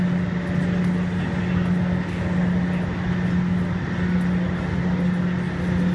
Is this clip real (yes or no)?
yes